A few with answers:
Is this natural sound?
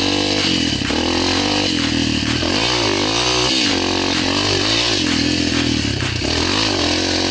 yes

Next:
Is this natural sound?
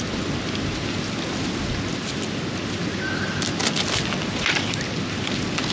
yes